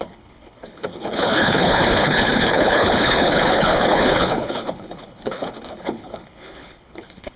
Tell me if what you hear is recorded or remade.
remade